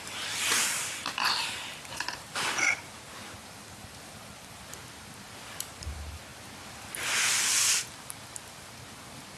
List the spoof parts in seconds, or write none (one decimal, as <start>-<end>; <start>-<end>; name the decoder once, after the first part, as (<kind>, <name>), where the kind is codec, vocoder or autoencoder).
0.0-9.4 (vocoder, BigVGAN v2)